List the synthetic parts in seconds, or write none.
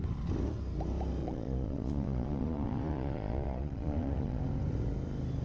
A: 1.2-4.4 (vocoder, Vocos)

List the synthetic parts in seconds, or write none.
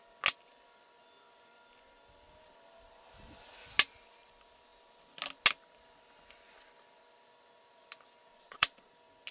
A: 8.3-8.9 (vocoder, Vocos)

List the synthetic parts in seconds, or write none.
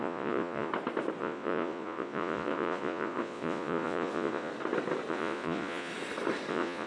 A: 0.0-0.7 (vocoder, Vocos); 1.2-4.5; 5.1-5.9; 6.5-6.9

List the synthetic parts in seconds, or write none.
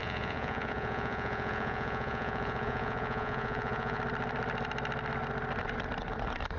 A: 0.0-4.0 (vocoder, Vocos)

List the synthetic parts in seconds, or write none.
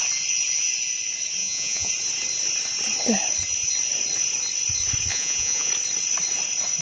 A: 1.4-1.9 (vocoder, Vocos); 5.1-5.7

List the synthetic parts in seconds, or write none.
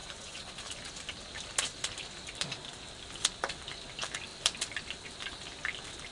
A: 0.0-0.5 (vocoder, Vocos)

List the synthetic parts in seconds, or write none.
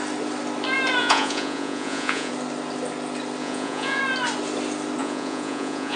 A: 1.0-2.3 (vocoder, Vocos); 3.4-4.0; 5.0-6.0